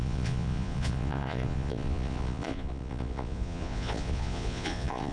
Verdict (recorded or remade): remade